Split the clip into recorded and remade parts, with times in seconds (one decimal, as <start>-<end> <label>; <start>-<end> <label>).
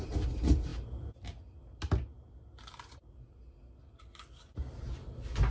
0.0-5.5 recorded